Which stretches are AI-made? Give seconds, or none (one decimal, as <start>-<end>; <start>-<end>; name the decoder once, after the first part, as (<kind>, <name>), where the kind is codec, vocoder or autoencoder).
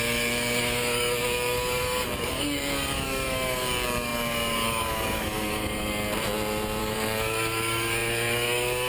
0.0-6.0 (codec, DAC); 6.8-8.9